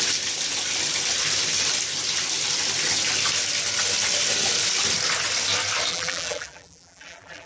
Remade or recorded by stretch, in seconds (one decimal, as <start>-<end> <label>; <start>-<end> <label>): 0.0-5.9 recorded; 5.9-7.5 remade